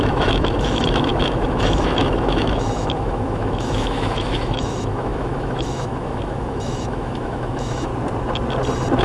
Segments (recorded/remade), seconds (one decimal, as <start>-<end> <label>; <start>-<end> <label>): 0.0-7.9 remade; 7.9-9.0 recorded